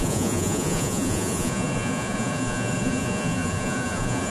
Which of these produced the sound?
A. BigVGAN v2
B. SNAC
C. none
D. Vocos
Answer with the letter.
D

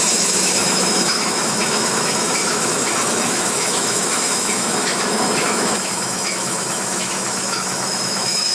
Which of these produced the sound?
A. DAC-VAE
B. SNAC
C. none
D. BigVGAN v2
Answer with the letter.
A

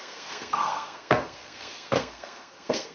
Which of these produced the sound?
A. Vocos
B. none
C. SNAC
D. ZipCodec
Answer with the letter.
C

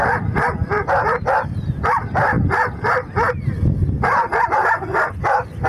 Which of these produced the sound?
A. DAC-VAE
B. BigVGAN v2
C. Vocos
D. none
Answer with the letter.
D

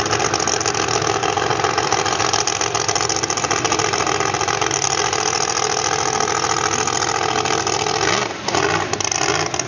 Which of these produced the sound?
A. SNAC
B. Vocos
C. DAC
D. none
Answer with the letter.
D